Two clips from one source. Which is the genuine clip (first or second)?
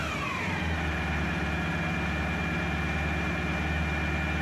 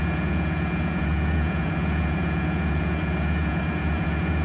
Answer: first